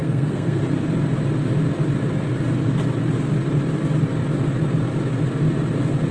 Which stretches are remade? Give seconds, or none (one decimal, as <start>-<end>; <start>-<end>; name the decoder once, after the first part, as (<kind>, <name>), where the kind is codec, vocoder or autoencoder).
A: 0.0-0.6 (codec, SNAC)

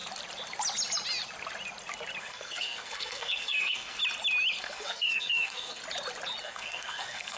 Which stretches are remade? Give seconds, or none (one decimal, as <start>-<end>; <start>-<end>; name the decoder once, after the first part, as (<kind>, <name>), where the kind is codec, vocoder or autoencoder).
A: 2.2-4.0 (codec, SNAC); 4.6-5.8; 6.4-7.4

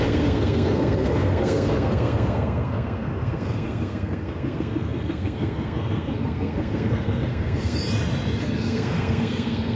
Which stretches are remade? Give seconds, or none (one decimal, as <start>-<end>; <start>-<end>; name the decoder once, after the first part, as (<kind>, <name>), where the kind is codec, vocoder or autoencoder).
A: 0.0-7.8 (codec, SNAC); 8.4-9.8

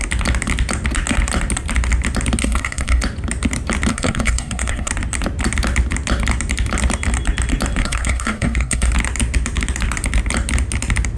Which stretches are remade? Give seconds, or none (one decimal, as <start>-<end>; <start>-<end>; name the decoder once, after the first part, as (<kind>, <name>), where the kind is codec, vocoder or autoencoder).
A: 2.4-3.0 (codec, SNAC); 3.9-4.9; 7.8-8.9

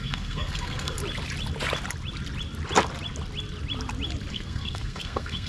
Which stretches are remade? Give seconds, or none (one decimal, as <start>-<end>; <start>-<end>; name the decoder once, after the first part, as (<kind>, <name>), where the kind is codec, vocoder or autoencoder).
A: 0.0-1.0 (codec, SNAC); 4.3-5.5

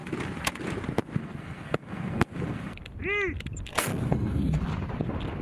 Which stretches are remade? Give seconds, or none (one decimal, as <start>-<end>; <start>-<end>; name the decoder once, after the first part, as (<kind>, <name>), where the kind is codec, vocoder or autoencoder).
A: 1.2-2.8 (codec, SNAC); 3.7-4.6